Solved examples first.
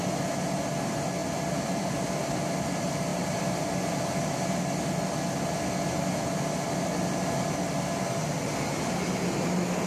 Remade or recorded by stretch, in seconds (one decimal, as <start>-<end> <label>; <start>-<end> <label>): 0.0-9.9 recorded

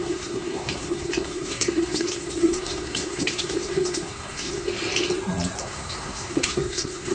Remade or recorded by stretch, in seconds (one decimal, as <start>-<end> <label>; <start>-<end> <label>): 0.0-4.7 remade; 4.7-5.6 recorded; 5.6-7.1 remade

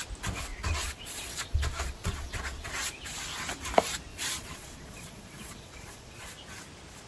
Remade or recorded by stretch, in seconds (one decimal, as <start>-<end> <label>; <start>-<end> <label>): 0.0-0.5 recorded; 0.5-2.7 remade; 2.7-4.1 recorded; 4.1-6.3 remade; 6.3-7.1 recorded

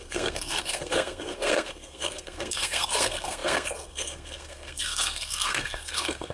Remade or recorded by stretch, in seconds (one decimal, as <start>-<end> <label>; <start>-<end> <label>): 0.0-6.3 remade

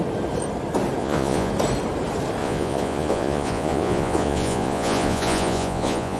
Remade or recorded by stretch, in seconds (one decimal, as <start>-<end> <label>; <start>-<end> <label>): 0.0-1.0 recorded; 1.0-1.5 remade; 1.5-2.4 recorded; 2.4-6.2 remade

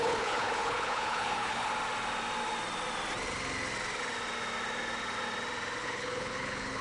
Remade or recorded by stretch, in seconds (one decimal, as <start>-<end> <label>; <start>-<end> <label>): 0.0-1.7 remade; 1.7-5.8 recorded; 5.8-6.8 remade

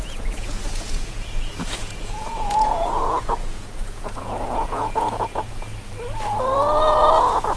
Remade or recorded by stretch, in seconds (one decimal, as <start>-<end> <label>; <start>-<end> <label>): 0.0-5.7 remade; 5.7-7.6 recorded

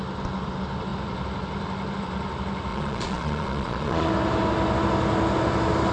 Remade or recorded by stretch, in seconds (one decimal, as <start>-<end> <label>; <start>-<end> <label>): 0.0-2.7 recorded; 2.7-4.1 remade; 4.1-5.9 recorded